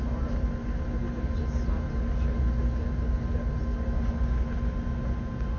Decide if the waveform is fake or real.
real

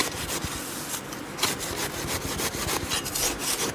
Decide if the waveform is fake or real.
real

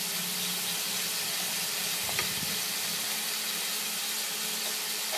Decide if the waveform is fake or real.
real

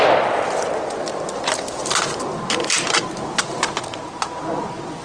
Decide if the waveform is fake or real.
real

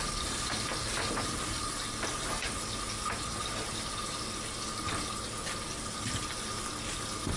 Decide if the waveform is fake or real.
real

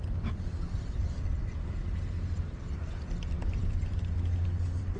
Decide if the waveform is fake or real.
fake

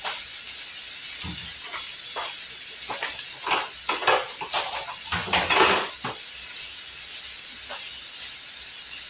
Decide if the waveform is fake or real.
real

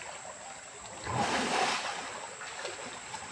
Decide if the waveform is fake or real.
real